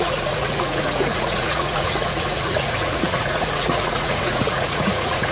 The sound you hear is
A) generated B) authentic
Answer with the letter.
A